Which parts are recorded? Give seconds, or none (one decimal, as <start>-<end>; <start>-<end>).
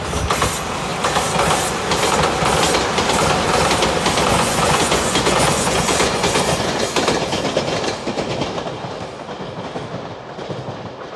0.0-4.3; 6.8-11.2